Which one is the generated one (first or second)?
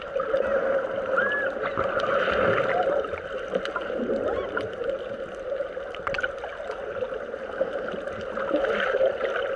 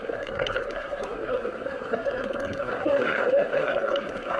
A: second